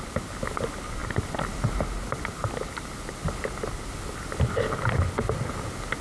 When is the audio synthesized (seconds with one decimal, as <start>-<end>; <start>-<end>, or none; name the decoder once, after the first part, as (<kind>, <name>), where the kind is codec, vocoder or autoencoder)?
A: 1.0-3.3 (vocoder, BigVGAN v2)